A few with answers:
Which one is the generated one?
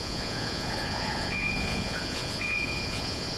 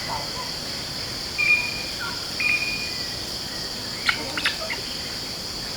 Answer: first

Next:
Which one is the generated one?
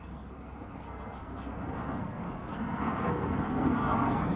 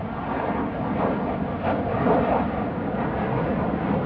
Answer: first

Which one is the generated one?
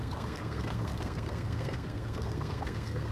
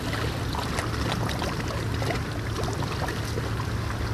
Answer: first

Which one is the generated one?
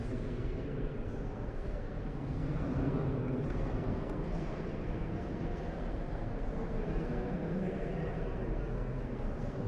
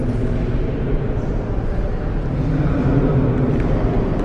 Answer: first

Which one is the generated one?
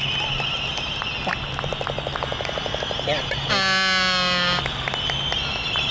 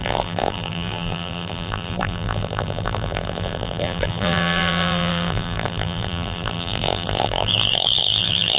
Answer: second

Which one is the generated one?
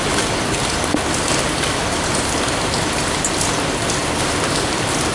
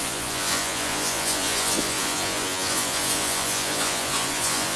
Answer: second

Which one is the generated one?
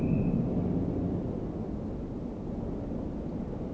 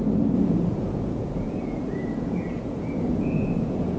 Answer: second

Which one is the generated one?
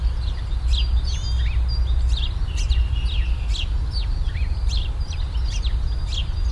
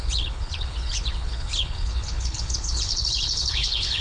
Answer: second